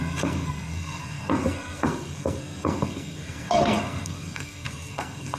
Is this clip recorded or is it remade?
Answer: remade